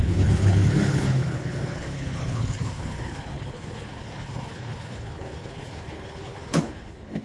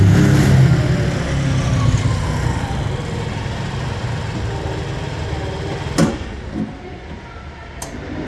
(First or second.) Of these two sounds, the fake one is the first